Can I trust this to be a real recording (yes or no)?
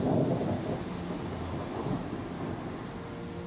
yes